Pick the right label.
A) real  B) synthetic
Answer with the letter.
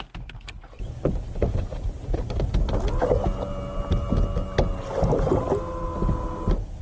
A